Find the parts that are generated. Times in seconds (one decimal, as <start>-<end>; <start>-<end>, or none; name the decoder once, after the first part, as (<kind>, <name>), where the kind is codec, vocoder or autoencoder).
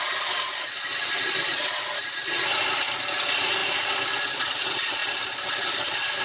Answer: none